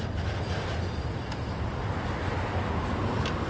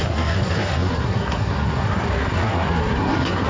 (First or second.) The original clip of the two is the first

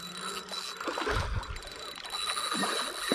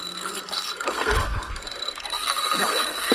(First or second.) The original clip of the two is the first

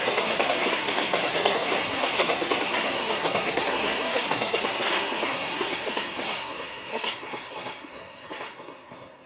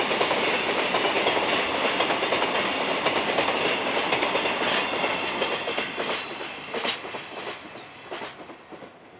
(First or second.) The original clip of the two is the second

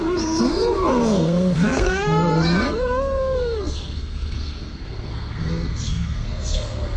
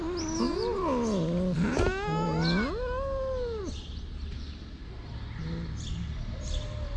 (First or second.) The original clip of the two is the second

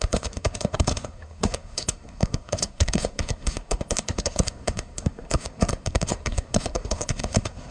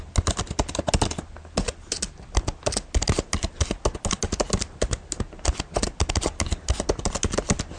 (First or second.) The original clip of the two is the second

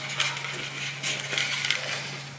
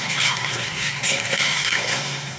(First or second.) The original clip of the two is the first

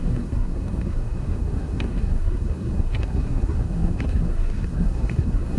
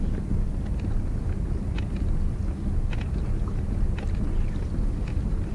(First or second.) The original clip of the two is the second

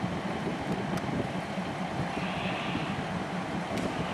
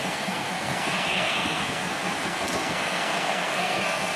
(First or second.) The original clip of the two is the first